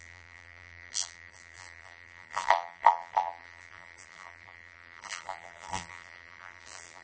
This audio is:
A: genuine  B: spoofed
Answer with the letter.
B